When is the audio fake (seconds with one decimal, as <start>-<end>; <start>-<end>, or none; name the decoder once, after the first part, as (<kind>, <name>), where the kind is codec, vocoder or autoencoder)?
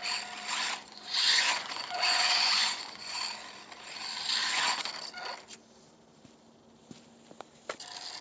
0.8-3.2 (vocoder, Vocos); 4.4-4.9